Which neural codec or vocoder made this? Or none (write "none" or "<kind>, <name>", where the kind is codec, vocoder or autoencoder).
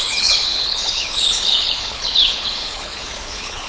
codec, HILCodec